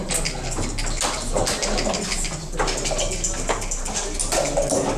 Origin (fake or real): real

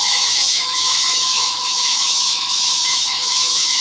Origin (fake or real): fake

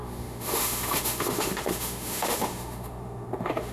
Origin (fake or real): fake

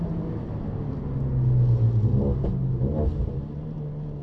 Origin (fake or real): real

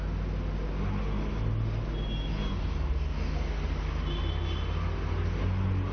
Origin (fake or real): real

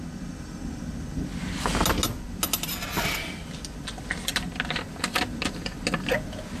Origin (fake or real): real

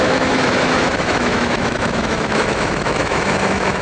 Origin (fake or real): fake